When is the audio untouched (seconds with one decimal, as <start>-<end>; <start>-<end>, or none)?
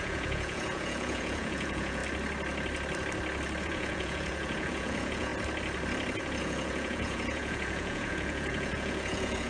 2.0-3.6; 5.3-6.4